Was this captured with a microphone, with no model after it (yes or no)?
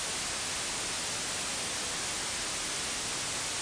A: yes